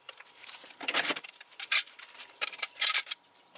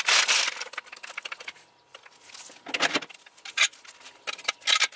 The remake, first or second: first